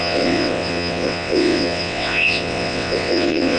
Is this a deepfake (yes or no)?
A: yes